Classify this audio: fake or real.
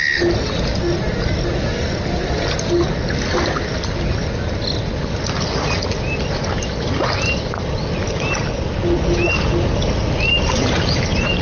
real